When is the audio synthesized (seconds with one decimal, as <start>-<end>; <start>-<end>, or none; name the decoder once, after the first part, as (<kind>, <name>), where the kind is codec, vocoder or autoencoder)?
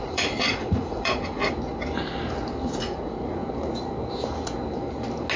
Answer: 0.0-1.4 (vocoder, Vocos); 2.7-3.4